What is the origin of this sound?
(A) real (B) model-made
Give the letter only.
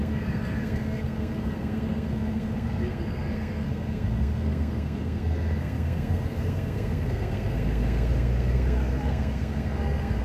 B